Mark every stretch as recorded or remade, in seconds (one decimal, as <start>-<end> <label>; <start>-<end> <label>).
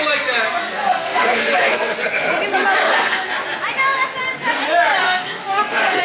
0.0-0.6 recorded; 0.6-2.0 remade; 2.0-2.8 recorded; 2.8-3.3 remade; 3.3-5.0 recorded; 5.0-6.0 remade